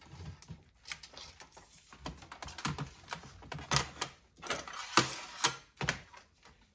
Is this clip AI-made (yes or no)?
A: no